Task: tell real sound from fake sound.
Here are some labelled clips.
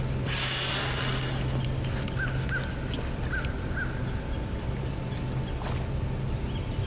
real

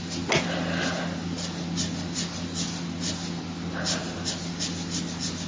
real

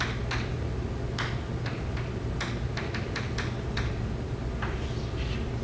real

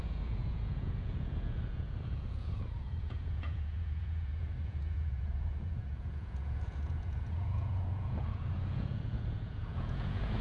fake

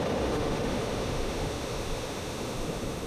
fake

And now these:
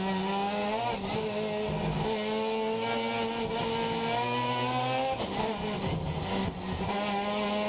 real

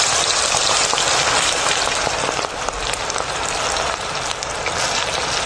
real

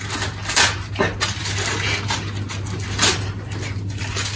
real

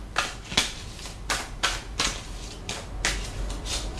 real